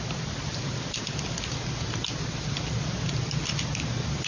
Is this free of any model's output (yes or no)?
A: yes